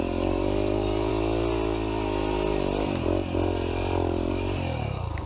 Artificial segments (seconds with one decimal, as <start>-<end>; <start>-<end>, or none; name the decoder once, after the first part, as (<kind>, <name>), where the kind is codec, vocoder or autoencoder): 0.0-1.1 (codec, DAC); 4.3-5.3